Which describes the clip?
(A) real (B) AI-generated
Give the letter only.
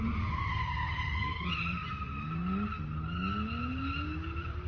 A